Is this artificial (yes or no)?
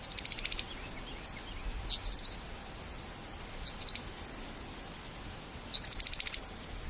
no